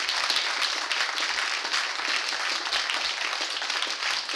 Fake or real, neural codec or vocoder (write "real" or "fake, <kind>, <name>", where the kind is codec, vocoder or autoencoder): real